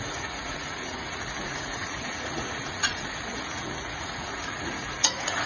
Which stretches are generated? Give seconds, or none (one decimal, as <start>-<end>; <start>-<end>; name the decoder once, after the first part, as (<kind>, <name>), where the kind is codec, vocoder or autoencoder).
0.0-5.5 (vocoder, Vocos)